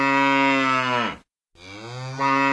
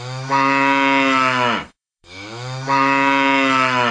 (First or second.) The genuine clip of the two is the first